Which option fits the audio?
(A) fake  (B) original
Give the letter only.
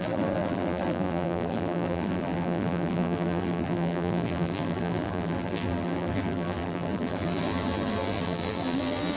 A